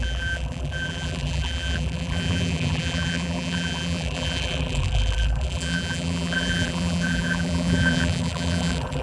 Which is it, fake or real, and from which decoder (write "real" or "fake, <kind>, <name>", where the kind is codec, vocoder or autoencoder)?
fake, vocoder, BigVGAN v2